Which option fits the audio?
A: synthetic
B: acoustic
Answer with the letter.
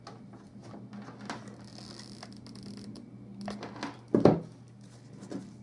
B